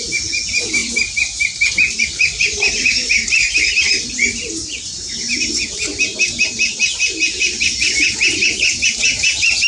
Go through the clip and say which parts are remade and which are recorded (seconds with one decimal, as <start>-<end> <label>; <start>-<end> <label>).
0.0-2.5 recorded; 2.5-3.9 remade; 3.9-4.6 recorded; 4.6-5.4 remade; 5.4-9.7 recorded